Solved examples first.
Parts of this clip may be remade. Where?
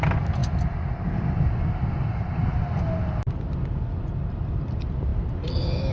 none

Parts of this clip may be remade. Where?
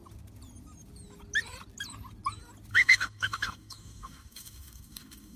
2.7-5.4 (codec, DAC)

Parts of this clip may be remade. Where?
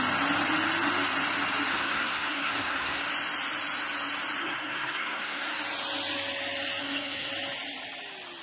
1.7-3.0 (codec, SNAC); 4.4-5.5; 6.8-7.3